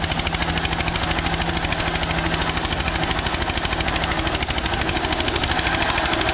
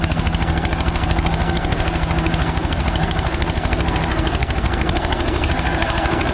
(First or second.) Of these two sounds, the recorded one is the first